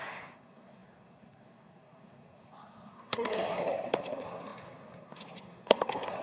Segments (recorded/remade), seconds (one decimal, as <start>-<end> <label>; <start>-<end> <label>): 0.0-6.2 remade